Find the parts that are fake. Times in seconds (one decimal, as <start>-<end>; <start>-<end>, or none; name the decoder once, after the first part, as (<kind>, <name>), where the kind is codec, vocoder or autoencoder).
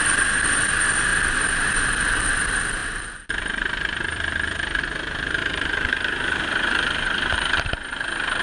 1.1-1.9 (vocoder, BigVGAN v2); 2.8-4.8; 5.4-8.4